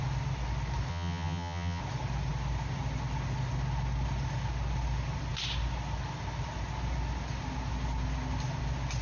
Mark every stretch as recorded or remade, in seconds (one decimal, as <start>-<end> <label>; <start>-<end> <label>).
0.0-0.9 recorded; 0.9-1.8 remade; 1.8-9.0 recorded